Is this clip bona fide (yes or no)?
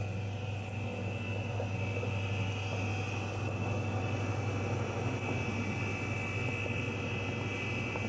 yes